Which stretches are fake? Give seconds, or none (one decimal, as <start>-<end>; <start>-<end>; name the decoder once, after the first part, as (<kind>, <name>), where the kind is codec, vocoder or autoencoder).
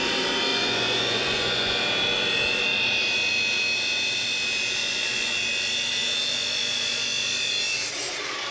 0.5-1.8 (vocoder, Vocos); 4.8-5.4